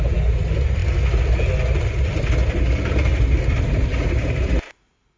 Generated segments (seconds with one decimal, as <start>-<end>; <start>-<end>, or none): none